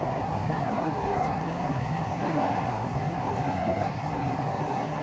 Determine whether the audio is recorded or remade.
remade